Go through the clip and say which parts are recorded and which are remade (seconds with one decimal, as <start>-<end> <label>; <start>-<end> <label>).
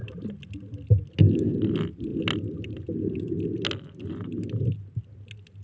0.0-5.6 recorded